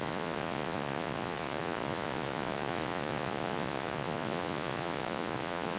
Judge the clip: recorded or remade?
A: remade